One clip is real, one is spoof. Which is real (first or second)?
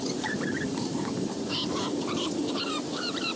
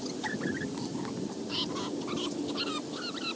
second